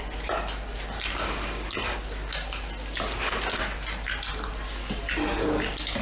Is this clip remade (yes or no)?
no